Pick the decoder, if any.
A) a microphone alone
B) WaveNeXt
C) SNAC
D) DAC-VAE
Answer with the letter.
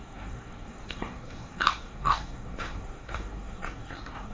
C